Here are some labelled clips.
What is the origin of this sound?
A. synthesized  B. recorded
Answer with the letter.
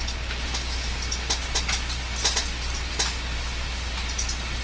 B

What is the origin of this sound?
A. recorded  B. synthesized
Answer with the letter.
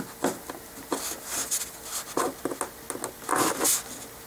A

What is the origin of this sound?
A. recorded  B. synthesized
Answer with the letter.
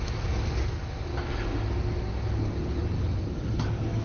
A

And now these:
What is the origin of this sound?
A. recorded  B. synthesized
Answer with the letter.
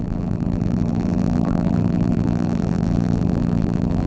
B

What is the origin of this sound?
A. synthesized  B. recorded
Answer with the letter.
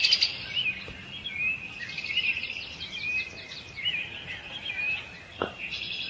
B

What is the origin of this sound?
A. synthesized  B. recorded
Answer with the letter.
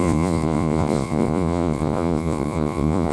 A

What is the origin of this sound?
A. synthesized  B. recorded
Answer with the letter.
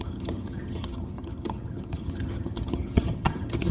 A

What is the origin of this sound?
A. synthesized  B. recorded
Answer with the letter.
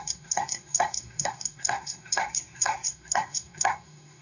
A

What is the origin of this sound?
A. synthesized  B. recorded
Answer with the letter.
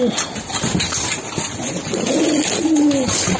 B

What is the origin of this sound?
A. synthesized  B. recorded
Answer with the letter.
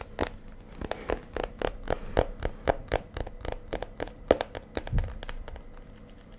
B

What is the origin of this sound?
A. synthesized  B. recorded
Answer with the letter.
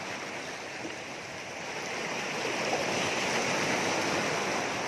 B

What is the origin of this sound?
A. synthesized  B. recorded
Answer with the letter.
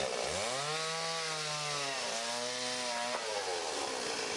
B